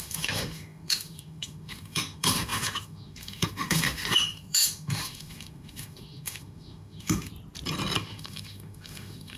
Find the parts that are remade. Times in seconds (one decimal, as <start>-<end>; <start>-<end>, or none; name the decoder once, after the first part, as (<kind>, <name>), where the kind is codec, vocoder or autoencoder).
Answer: 0.0-7.3 (autoencoder, DAC-VAE); 8.0-9.4